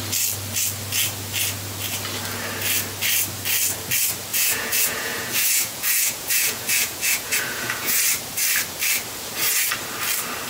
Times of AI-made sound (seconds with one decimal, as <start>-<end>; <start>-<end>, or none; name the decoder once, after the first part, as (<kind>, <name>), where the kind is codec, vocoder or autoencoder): 4.3-8.0 (vocoder, Vocos)